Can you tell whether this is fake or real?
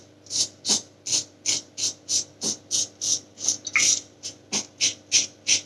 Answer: real